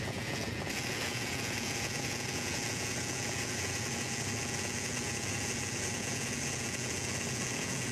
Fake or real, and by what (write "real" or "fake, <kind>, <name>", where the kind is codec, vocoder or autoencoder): fake, vocoder, Vocos